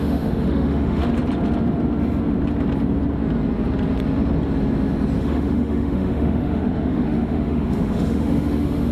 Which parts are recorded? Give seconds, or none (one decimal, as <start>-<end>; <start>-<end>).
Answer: 1.0-5.2